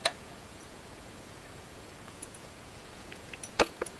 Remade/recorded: remade